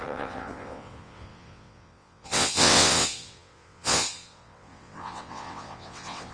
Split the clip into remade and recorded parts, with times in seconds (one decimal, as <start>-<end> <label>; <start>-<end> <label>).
0.0-6.3 remade